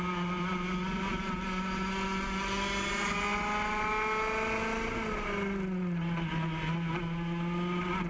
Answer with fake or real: real